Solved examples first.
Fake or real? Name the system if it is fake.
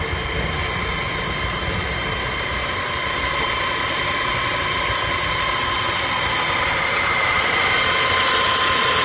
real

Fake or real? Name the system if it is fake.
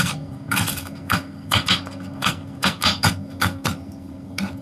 fake, codec, SNAC